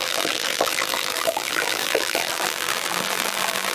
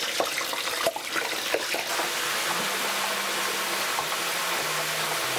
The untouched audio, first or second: second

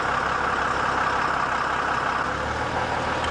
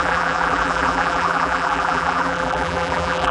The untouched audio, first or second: first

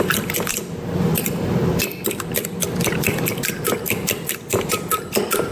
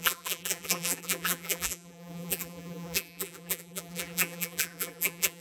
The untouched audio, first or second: first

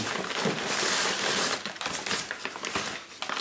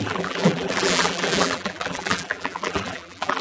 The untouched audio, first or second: first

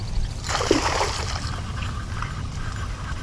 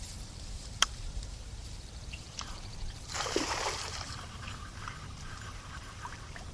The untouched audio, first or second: first